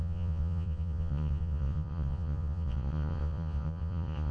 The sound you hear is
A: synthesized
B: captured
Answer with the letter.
A